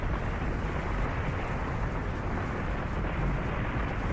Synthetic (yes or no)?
no